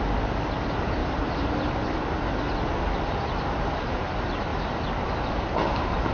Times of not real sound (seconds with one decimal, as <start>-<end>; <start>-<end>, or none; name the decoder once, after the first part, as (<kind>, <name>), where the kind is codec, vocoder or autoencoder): none